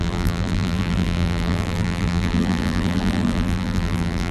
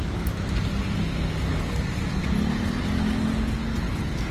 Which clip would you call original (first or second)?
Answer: second